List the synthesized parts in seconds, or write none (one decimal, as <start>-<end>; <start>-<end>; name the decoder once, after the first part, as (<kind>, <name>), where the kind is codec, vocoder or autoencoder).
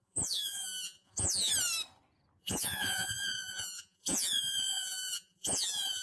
0.0-1.5 (vocoder, Vocos); 2.4-6.0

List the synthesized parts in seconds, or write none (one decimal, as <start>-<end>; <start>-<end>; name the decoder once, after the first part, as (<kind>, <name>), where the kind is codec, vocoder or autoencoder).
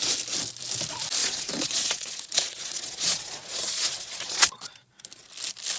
1.2-4.7 (vocoder, Vocos)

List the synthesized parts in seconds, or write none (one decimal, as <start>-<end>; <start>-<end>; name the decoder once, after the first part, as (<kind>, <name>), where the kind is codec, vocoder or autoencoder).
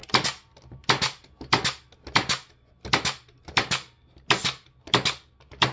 none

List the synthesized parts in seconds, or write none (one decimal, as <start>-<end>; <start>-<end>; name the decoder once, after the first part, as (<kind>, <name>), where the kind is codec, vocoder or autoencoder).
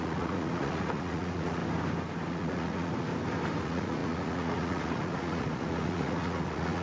0.0-1.6 (vocoder, Vocos); 2.3-3.1; 3.6-6.8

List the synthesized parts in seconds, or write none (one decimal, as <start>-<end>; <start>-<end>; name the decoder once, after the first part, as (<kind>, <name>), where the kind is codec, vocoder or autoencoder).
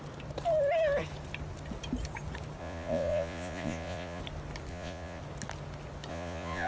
2.6-4.2 (vocoder, Vocos); 4.7-5.2; 6.1-6.7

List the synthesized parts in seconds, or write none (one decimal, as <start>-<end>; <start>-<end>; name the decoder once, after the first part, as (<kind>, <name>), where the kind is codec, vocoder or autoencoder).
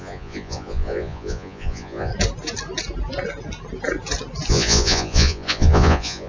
0.0-2.1 (vocoder, Vocos); 4.5-6.3